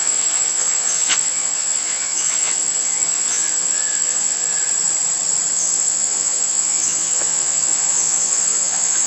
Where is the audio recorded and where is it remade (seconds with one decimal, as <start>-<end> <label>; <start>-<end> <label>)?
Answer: 0.0-4.5 remade; 4.5-5.5 recorded; 5.5-9.1 remade